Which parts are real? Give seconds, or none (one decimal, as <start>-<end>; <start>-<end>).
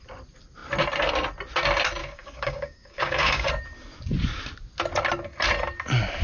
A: 0.0-2.0; 3.5-6.2